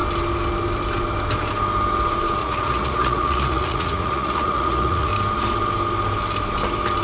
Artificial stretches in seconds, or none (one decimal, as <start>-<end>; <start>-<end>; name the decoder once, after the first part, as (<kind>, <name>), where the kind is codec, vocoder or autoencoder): 2.4-5.1 (vocoder, Vocos)